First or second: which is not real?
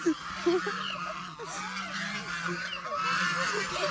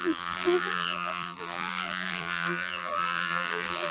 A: second